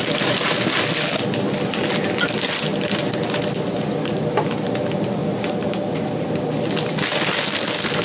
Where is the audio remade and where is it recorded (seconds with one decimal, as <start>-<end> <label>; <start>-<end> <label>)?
0.0-5.2 recorded; 5.2-6.1 remade; 6.1-8.0 recorded